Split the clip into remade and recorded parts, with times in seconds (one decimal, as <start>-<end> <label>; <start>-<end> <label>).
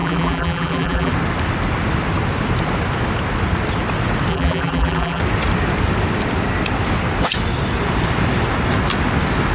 0.0-1.1 remade; 1.1-4.3 recorded; 4.3-5.2 remade; 5.2-9.5 recorded